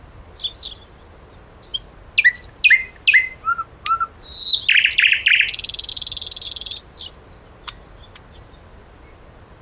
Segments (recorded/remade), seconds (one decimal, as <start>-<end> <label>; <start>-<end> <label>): 0.0-9.6 recorded